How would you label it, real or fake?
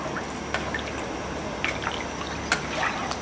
real